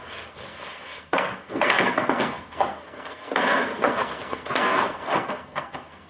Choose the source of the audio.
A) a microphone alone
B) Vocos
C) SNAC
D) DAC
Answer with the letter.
C